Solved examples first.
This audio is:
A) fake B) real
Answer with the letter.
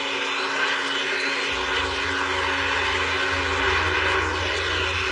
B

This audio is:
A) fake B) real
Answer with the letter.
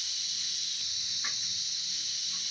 B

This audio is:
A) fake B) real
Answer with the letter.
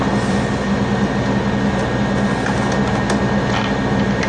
B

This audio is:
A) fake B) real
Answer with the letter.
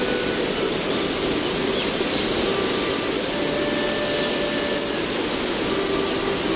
B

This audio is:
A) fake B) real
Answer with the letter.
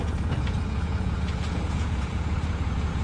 A